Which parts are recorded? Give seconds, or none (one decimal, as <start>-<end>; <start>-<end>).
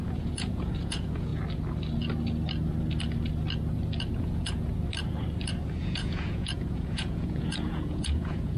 1.3-4.1; 4.7-5.8